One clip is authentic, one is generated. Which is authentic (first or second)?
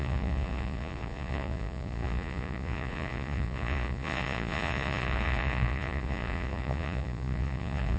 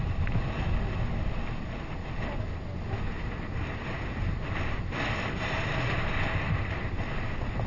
second